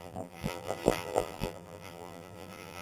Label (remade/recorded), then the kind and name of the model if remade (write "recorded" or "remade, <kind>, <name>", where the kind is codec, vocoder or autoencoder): remade, vocoder, BigVGAN v2